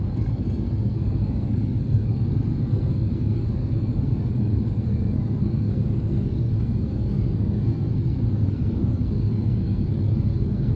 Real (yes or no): no